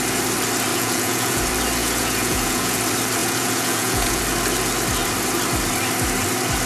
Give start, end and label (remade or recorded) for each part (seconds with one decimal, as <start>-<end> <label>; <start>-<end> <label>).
0.0-0.7 recorded; 0.7-1.4 remade; 1.4-1.8 recorded; 1.8-2.8 remade; 2.8-3.2 recorded; 3.2-4.2 remade; 4.2-6.7 recorded